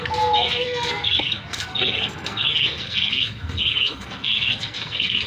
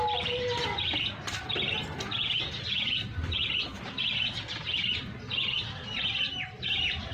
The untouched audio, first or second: second